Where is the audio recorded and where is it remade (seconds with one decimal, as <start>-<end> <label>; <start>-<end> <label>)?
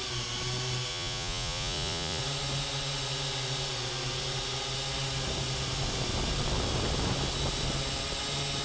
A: 0.0-0.9 recorded; 0.9-2.2 remade; 2.2-8.6 recorded